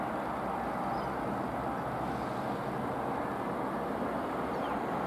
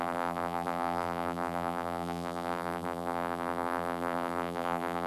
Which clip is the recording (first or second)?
first